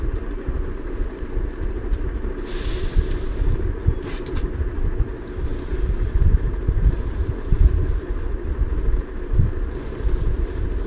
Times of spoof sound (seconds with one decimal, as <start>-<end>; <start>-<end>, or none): none